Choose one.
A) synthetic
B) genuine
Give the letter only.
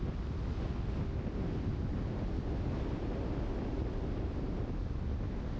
B